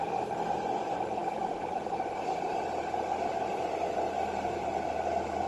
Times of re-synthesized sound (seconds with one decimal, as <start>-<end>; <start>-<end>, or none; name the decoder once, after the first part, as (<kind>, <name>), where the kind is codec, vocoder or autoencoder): none